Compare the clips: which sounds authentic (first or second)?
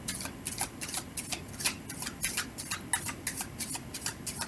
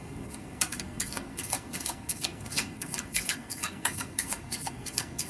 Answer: first